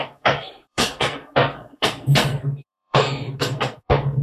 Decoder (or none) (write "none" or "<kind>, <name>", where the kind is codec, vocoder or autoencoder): codec, SNAC